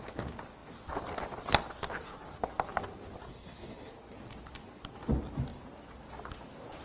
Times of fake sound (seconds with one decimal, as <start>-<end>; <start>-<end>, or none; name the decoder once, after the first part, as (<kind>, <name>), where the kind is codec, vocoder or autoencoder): 3.3-3.9 (codec, HILCodec)